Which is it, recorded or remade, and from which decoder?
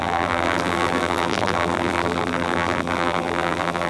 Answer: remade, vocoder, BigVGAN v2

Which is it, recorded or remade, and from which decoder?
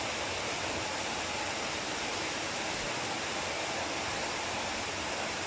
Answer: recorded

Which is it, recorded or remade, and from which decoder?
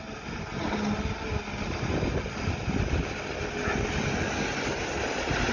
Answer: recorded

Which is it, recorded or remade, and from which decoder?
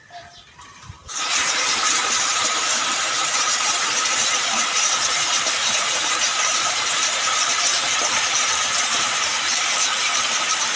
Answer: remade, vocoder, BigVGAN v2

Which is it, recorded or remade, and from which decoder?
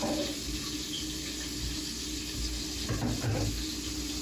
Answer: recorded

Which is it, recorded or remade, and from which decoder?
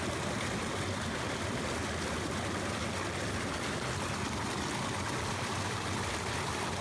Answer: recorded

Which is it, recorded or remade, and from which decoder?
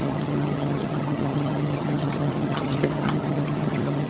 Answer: remade, vocoder, HiFi-GAN